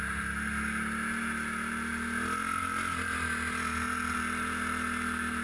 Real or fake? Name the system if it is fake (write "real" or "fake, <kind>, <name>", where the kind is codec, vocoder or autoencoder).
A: real